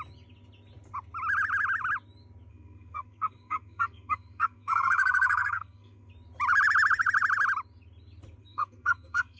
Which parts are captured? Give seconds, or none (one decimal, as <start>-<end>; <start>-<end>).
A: 0.0-2.5; 6.1-8.4